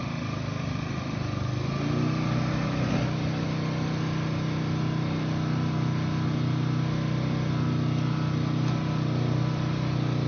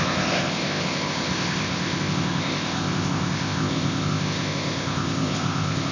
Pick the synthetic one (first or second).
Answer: second